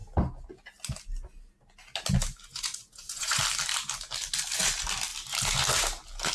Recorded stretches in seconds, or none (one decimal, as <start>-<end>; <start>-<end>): 0.0-2.5; 3.4-6.3